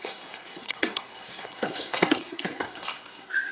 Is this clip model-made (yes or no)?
yes